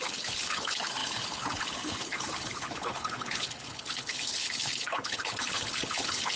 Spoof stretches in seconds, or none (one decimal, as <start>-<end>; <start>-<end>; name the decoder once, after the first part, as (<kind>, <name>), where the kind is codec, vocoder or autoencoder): 0.0-6.4 (codec, HILCodec)